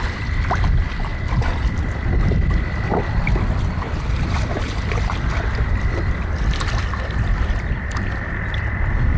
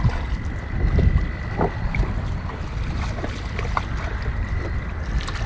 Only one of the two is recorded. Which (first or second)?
second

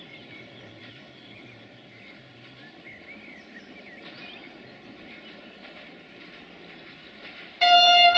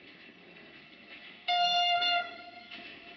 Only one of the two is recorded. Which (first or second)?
first